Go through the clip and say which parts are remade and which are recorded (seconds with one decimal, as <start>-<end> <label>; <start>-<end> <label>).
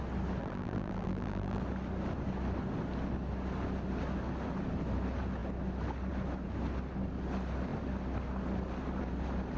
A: 0.0-0.4 recorded; 0.4-1.6 remade; 1.6-9.6 recorded